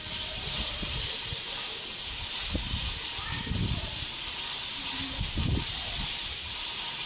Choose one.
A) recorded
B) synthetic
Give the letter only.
B